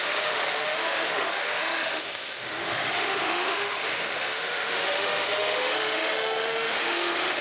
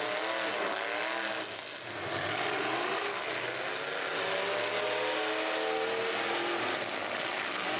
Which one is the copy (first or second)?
first